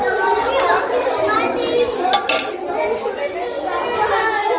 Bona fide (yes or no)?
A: yes